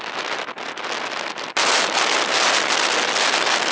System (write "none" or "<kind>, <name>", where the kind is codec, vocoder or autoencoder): none